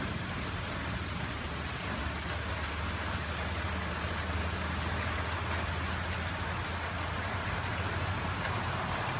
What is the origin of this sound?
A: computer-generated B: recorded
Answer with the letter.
B